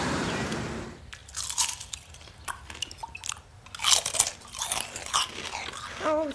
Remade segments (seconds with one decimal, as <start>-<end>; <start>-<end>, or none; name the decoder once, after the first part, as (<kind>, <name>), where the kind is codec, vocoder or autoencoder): none